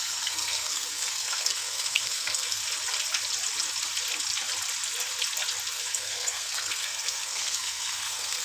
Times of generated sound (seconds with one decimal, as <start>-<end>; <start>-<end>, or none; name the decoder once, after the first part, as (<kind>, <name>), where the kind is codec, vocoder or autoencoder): 0.0-2.6 (codec, SNAC); 5.7-8.4